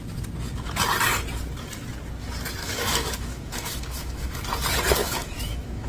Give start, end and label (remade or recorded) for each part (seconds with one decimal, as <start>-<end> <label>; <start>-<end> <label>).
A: 0.0-2.6 recorded; 2.6-4.4 remade; 4.4-5.0 recorded; 5.0-5.9 remade